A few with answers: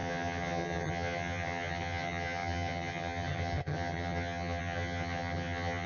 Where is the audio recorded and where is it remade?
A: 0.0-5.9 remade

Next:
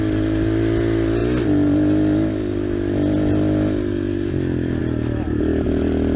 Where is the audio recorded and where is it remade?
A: 0.0-6.2 recorded

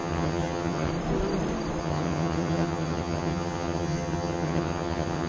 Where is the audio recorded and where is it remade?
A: 0.0-0.9 remade; 0.9-1.8 recorded; 1.8-5.3 remade

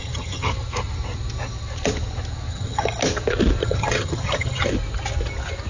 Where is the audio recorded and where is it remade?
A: 0.0-0.5 remade; 0.5-2.5 recorded; 2.5-3.0 remade; 3.0-3.6 recorded; 3.6-4.7 remade; 4.7-5.7 recorded

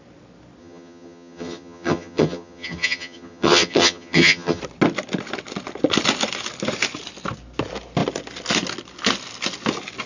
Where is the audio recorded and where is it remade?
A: 0.0-0.6 recorded; 0.6-4.6 remade; 4.6-10.1 recorded

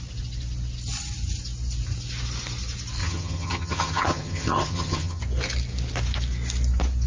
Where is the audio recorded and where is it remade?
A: 0.0-3.0 recorded; 3.0-5.2 remade; 5.2-7.1 recorded

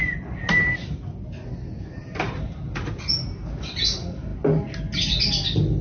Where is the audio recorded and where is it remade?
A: 0.0-5.8 recorded

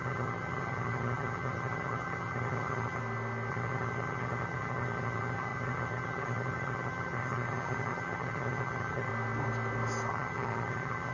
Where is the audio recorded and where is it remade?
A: 0.0-3.0 remade; 3.0-3.5 recorded; 3.5-9.1 remade; 9.1-10.1 recorded; 10.1-11.1 remade